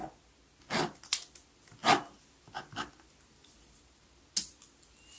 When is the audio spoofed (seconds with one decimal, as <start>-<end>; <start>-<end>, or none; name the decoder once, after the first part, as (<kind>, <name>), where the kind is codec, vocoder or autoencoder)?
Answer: none